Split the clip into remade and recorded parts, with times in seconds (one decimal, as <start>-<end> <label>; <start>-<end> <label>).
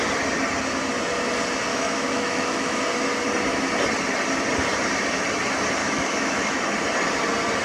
0.0-1.7 recorded; 1.7-2.8 remade; 2.8-5.8 recorded; 5.8-6.6 remade; 6.6-7.6 recorded